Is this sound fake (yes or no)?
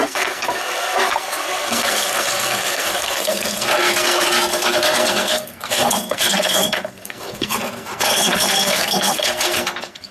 yes